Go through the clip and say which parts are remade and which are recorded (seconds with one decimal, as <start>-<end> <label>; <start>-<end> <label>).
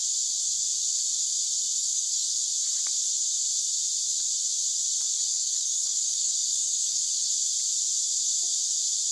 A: 0.0-1.8 recorded; 1.8-2.4 remade; 2.4-5.3 recorded; 5.3-7.3 remade; 7.3-9.1 recorded